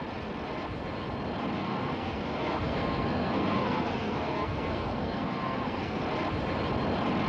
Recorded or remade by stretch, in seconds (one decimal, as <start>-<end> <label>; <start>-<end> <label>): 0.0-1.6 recorded; 1.6-6.0 remade; 6.0-7.3 recorded